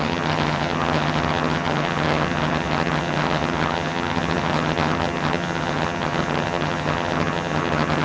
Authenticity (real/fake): fake